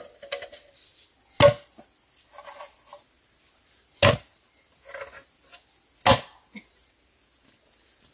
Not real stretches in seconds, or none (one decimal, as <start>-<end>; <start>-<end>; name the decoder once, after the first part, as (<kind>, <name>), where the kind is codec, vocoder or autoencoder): none